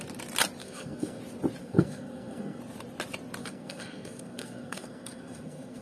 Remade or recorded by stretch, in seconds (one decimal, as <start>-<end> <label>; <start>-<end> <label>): 0.0-0.6 recorded; 0.6-1.2 remade; 1.2-1.6 recorded; 1.6-2.6 remade; 2.6-3.4 recorded; 3.4-5.8 remade